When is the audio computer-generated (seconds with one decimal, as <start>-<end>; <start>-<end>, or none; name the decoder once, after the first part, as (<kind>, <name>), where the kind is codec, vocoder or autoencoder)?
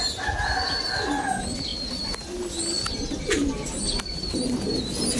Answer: none